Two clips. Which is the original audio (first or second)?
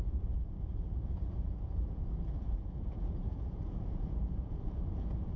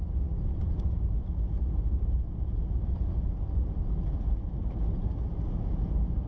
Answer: second